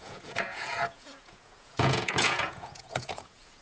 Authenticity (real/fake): fake